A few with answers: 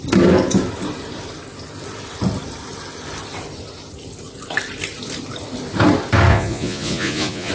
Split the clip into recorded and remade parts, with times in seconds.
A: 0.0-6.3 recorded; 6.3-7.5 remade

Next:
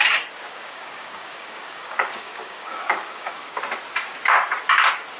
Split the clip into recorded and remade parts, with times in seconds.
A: 0.0-0.5 recorded; 0.5-3.6 remade; 3.6-5.2 recorded